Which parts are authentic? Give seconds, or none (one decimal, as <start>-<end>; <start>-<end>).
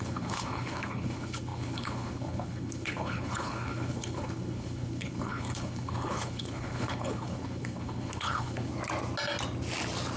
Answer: 8.7-10.2